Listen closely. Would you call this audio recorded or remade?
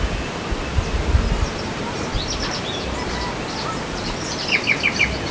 recorded